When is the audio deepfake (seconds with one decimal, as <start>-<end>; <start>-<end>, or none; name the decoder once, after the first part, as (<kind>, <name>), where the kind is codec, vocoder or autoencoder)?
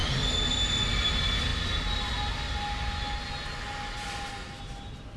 none